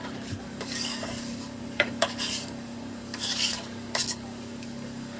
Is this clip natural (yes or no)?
no